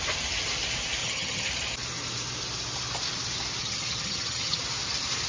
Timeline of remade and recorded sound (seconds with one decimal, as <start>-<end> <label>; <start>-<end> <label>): 0.0-1.0 recorded; 1.0-1.5 remade; 1.5-3.6 recorded; 3.6-4.6 remade; 4.6-5.3 recorded

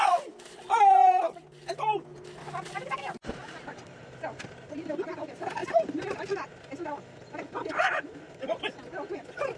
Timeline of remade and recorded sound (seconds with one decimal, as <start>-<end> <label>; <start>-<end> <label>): 0.0-1.0 remade; 1.0-2.5 recorded; 2.5-5.6 remade; 5.6-9.1 recorded; 9.1-9.6 remade

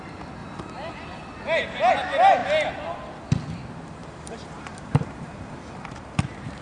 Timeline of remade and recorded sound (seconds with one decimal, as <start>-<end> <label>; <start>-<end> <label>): 0.0-4.0 recorded; 4.0-6.6 remade